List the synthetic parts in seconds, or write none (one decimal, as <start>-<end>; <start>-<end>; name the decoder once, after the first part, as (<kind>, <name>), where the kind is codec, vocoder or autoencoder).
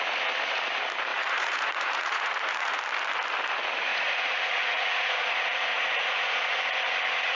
1.1-2.8 (vocoder, Vocos); 3.9-6.6